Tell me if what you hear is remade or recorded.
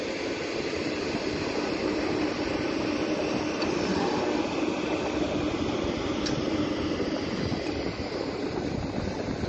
recorded